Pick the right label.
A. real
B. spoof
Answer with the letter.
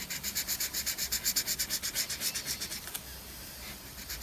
A